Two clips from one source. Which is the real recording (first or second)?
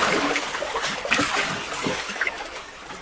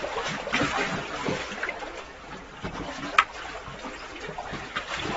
second